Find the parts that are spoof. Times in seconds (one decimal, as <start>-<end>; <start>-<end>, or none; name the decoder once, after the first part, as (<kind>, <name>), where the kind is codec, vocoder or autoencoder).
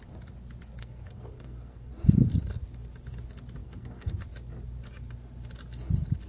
0.8-1.9 (codec, SNAC); 3.6-4.2